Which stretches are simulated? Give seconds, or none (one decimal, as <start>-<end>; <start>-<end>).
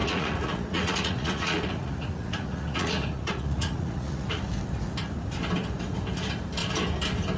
0.0-4.4